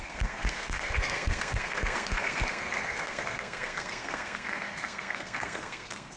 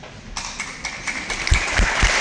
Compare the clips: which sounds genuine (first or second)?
second